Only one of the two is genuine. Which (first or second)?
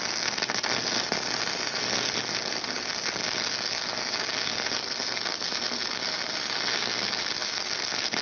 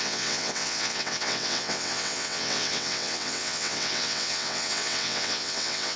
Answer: first